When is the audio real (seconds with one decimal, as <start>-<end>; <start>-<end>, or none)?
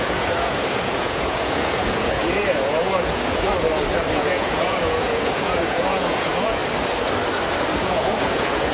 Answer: 3.5-4.1; 6.6-7.8